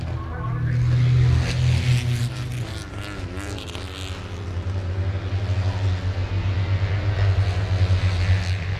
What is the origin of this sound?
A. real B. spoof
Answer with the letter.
A